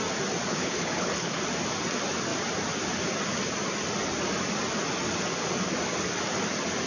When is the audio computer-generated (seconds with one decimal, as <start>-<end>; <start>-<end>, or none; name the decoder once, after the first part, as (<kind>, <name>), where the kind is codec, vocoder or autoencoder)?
0.5-1.4 (codec, HILCodec)